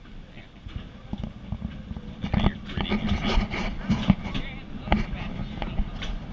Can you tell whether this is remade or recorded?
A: recorded